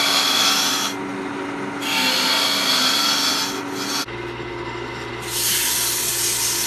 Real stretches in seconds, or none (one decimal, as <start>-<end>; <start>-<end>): 0.0-6.7